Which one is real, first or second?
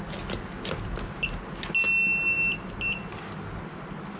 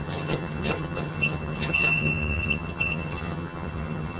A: first